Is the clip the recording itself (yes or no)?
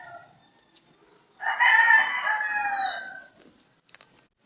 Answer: yes